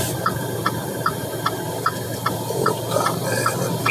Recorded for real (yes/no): no